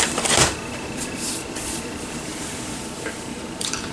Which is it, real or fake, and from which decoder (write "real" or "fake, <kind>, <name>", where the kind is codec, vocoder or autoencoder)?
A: fake, vocoder, BigVGAN v2